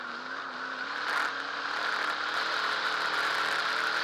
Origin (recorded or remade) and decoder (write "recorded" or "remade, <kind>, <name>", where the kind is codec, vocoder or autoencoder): recorded